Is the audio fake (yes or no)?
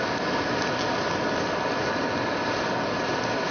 no